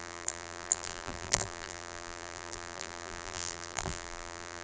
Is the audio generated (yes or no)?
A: yes